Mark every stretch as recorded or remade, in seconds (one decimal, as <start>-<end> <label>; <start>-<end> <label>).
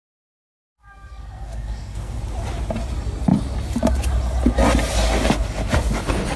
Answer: 0.0-0.6 recorded; 0.6-2.2 remade; 2.2-6.4 recorded